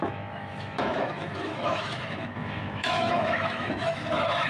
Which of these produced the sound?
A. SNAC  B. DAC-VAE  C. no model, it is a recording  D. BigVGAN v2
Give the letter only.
B